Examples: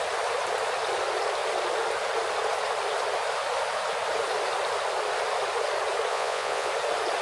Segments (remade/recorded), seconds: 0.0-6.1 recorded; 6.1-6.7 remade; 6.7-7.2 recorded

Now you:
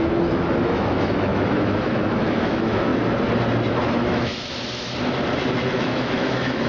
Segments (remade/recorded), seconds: 0.0-2.9 remade; 2.9-3.7 recorded; 3.7-4.3 remade; 4.3-5.7 recorded; 5.7-6.7 remade